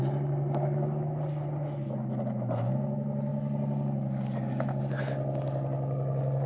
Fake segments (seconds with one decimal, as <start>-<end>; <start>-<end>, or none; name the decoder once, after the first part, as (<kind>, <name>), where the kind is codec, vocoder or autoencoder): none